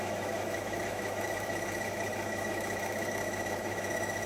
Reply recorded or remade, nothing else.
remade